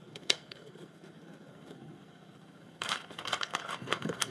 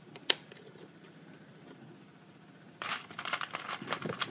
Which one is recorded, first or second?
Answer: second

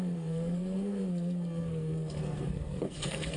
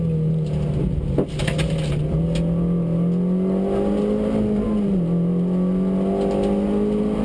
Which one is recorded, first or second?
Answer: second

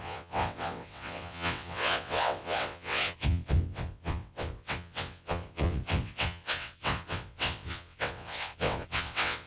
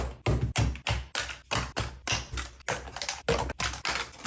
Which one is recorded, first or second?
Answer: second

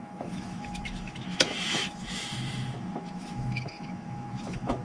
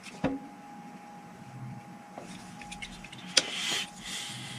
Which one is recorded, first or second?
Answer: second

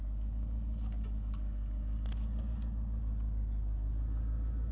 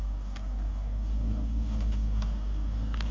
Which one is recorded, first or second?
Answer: first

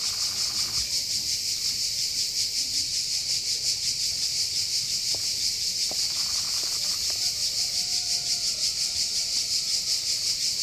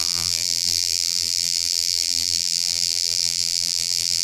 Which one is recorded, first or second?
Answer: first